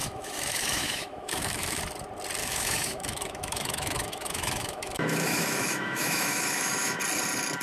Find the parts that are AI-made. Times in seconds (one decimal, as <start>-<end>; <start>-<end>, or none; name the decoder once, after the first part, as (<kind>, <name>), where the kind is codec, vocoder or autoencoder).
0.0-1.8 (autoencoder, DAC-VAE); 2.4-7.0